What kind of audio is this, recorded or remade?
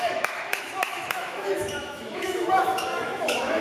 remade